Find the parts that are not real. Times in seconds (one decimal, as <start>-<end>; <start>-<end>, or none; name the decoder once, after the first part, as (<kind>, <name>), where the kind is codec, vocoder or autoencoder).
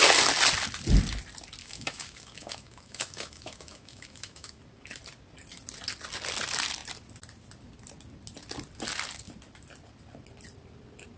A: 1.6-4.6 (autoencoder, DAC-VAE)